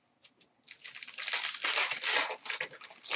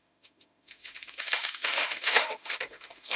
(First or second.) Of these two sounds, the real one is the first